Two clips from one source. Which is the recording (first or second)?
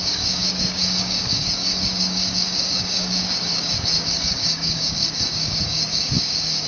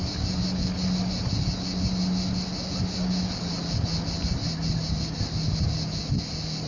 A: second